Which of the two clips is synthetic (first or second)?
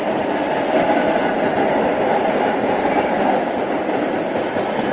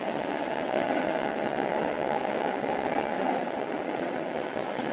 second